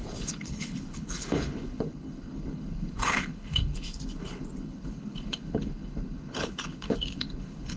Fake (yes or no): yes